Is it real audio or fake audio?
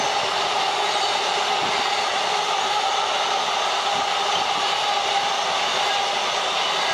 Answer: real